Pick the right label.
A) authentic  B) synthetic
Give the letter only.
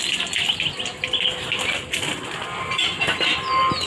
A